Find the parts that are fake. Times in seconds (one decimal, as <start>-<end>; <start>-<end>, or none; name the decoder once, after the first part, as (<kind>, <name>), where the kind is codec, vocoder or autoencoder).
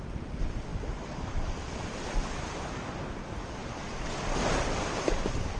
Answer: 0.7-1.9 (vocoder, BigVGAN v2)